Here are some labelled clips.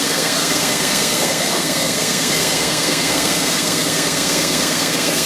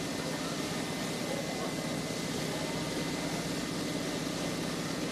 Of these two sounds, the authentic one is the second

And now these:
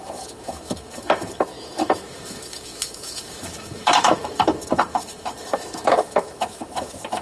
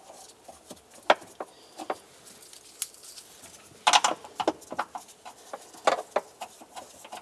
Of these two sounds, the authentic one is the second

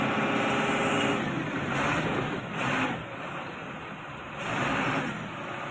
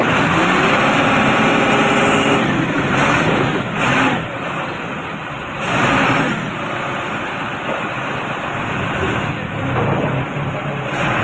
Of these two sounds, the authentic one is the first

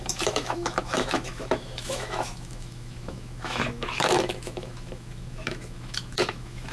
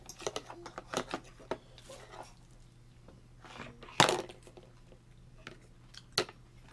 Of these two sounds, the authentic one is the second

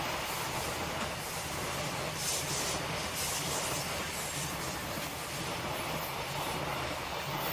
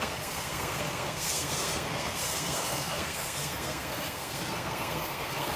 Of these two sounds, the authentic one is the first